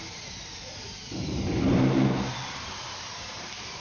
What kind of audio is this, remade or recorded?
remade